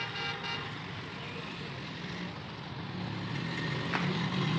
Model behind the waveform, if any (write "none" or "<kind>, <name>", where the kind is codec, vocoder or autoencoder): none